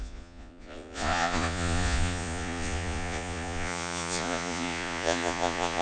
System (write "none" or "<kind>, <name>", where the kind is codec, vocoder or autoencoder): vocoder, Vocos